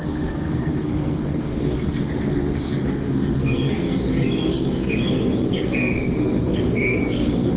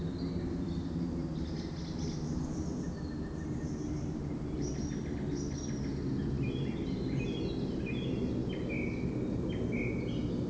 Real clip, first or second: second